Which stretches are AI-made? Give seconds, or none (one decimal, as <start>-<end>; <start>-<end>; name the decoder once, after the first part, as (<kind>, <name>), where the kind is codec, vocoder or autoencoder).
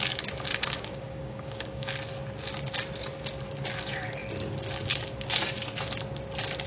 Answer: 0.5-1.9 (codec, DAC)